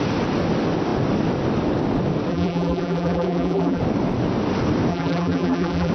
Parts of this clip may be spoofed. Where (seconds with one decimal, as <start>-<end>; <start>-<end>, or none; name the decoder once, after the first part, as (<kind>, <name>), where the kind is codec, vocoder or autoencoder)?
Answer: 2.3-3.8 (vocoder, BigVGAN v2); 4.9-5.9